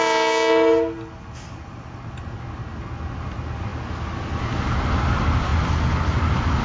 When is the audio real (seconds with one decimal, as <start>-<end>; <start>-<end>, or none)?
0.0-6.6